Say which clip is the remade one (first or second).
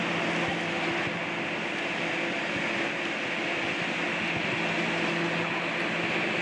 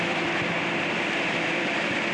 second